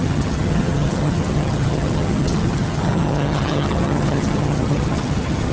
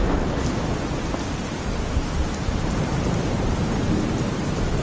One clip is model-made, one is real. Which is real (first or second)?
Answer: second